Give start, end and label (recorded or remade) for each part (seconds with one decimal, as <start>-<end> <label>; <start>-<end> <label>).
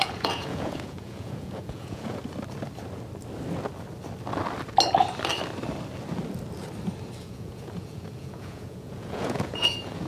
0.0-2.2 remade; 2.2-7.2 recorded; 7.2-10.1 remade